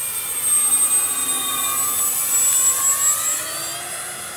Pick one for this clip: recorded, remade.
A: recorded